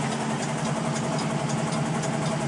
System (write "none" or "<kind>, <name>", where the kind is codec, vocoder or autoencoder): none